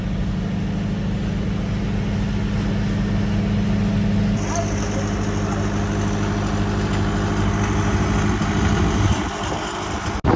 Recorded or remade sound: recorded